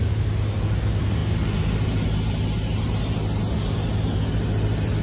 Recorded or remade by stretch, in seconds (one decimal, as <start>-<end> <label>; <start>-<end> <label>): 0.0-5.0 recorded

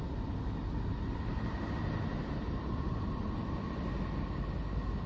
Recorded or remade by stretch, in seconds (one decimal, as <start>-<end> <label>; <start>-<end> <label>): 0.0-2.6 recorded; 2.6-3.2 remade; 3.2-5.1 recorded